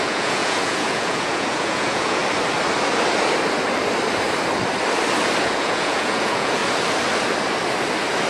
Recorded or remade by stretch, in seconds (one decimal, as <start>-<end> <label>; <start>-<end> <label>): 0.0-2.2 remade; 2.2-5.4 recorded; 5.4-6.6 remade; 6.6-8.3 recorded